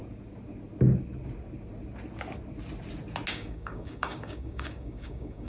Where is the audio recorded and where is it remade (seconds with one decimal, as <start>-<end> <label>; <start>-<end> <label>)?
0.0-3.3 recorded; 3.3-5.5 remade